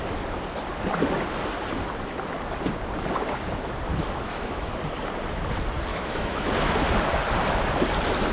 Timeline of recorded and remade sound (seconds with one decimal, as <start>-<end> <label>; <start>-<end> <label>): 0.0-3.9 recorded; 3.9-4.7 remade; 4.7-5.9 recorded; 5.9-6.5 remade; 6.5-8.3 recorded